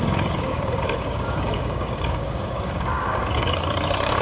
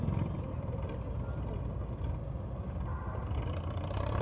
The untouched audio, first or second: second